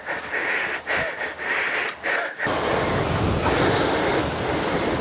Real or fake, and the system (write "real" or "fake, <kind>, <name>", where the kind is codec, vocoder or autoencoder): real